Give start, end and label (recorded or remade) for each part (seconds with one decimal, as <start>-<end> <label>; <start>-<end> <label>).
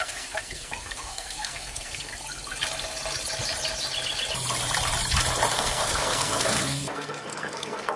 0.0-2.1 remade; 2.1-5.5 recorded; 5.5-8.0 remade